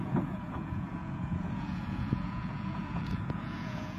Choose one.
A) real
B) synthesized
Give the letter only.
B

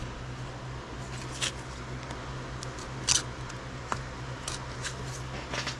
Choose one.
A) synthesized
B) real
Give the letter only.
B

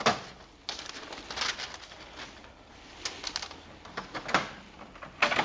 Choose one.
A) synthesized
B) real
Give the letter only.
B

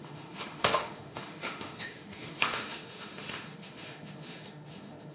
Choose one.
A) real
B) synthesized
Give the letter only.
B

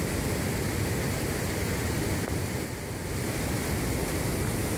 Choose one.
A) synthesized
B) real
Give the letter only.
B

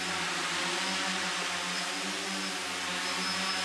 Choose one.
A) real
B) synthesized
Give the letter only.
A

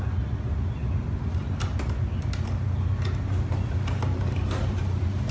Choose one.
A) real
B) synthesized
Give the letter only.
A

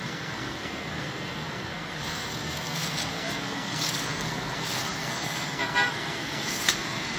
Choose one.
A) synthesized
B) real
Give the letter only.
A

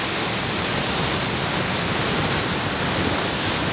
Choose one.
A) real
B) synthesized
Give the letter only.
A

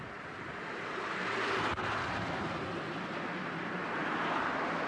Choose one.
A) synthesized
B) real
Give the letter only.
B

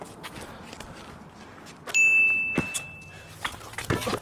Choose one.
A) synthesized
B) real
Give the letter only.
B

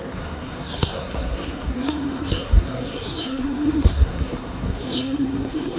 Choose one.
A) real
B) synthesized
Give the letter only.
B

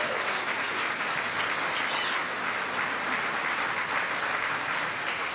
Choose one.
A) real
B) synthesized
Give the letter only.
A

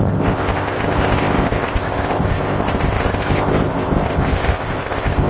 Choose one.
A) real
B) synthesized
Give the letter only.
B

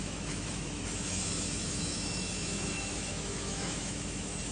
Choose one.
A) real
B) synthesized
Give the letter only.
B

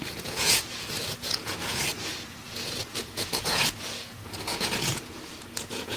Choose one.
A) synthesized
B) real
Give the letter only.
A